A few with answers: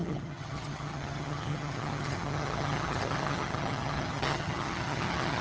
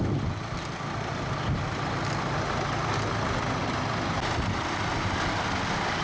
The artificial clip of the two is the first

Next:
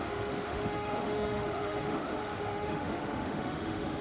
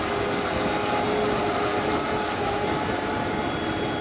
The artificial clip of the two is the first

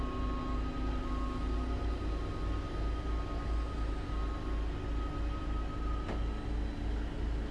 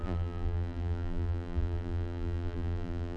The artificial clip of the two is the second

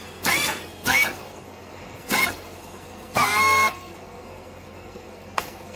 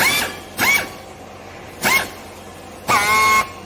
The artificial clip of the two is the first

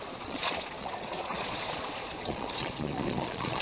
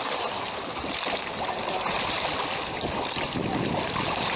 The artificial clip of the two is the first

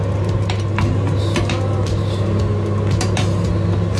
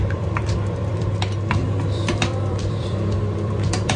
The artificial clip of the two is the second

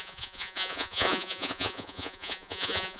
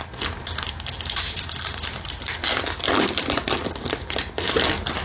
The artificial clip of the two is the first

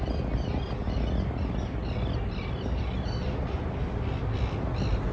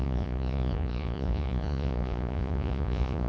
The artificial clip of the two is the second